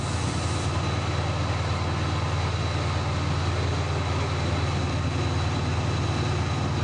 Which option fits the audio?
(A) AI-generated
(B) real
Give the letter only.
B